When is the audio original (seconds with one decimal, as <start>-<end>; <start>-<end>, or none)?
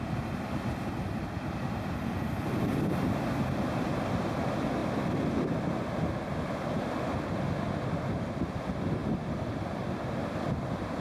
0.0-11.0